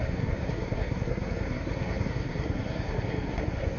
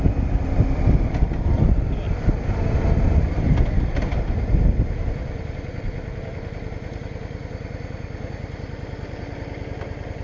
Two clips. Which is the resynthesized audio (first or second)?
first